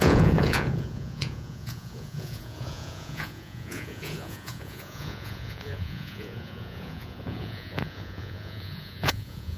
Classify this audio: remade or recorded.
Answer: remade